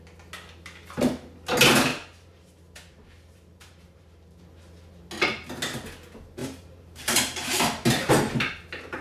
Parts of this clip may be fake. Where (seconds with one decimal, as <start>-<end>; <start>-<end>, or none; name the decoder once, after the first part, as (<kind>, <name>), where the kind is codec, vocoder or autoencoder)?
1.9-4.4 (vocoder, BigVGAN v2); 6.4-8.1